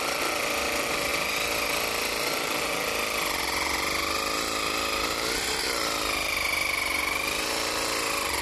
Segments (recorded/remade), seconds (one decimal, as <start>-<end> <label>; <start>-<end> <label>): 0.0-8.4 recorded